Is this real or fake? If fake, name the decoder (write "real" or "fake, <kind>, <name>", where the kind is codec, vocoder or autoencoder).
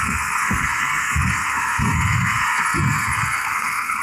fake, codec, SNAC